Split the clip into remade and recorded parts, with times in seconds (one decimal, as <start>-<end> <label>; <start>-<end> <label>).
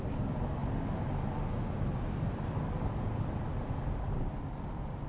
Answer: 0.0-5.1 recorded